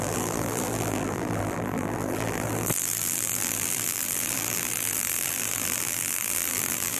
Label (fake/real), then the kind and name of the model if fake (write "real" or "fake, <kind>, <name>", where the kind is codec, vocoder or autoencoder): fake, vocoder, BigVGAN v2